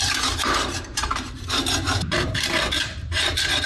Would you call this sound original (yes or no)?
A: no